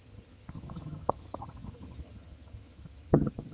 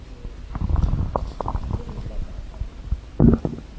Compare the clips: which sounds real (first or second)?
second